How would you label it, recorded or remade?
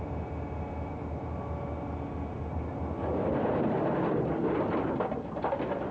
recorded